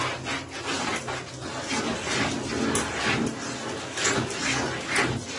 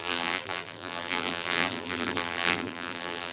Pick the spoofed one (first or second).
second